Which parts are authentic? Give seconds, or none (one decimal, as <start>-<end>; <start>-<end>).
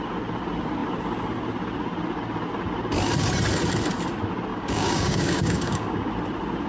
0.0-4.5; 6.1-6.7